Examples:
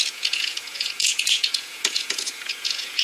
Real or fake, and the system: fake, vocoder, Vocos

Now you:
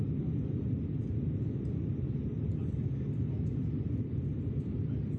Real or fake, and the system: real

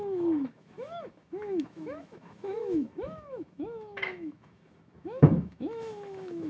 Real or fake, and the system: fake, autoencoder, DAC-VAE